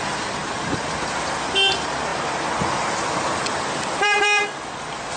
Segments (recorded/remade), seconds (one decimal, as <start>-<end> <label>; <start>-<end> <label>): 0.0-5.2 recorded